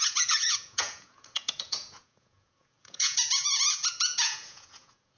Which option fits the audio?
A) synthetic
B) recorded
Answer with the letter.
A